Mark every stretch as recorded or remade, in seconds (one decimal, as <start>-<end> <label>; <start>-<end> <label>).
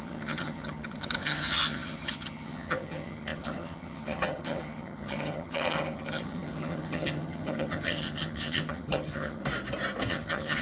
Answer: 0.0-9.4 remade; 9.4-10.1 recorded; 10.1-10.6 remade